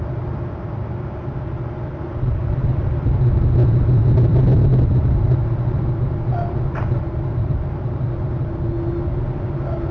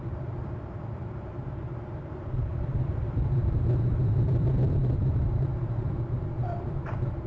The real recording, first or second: first